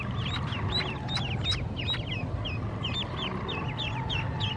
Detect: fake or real real